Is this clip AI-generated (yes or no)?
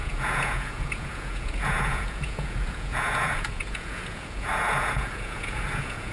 yes